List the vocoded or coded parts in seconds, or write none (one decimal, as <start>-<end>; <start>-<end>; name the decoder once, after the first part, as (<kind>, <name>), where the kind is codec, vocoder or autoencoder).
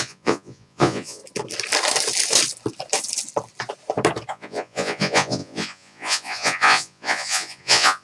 0.0-1.2 (vocoder, Vocos); 4.3-8.0